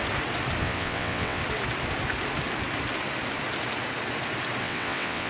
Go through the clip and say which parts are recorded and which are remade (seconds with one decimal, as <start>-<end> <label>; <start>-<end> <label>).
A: 0.0-0.6 recorded; 0.6-1.4 remade; 1.4-4.6 recorded; 4.6-5.3 remade